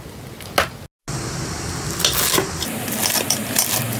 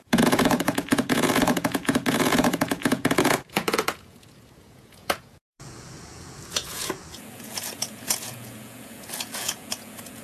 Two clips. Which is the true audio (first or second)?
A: first